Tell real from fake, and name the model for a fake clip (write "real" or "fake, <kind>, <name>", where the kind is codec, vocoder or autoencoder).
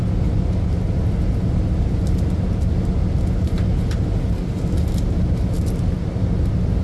real